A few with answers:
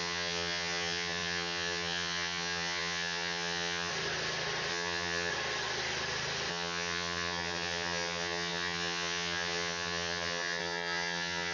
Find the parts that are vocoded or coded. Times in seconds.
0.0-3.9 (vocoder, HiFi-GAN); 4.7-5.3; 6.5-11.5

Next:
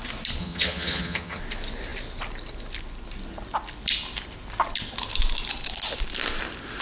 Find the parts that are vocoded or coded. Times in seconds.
0.4-1.4 (vocoder, HiFi-GAN)

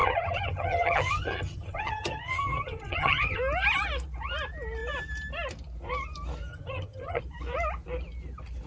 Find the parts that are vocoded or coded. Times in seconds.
0.0-3.4 (vocoder, HiFi-GAN); 6.5-7.2

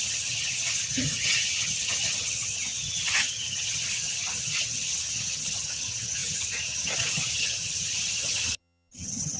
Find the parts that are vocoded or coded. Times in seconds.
0.0-9.4 (vocoder, HiFi-GAN)

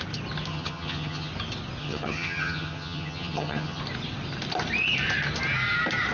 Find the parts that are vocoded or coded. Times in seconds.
0.5-1.3 (vocoder, HiFi-GAN); 1.8-3.8

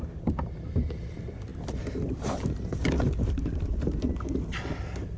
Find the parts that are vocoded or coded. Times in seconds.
none

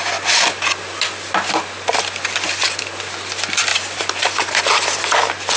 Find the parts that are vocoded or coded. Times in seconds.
none

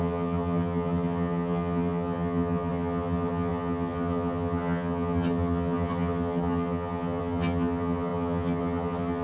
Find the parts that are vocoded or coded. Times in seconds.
0.0-9.2 (vocoder, HiFi-GAN)